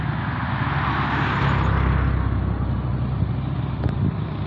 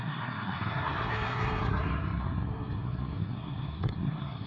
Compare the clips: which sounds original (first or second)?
first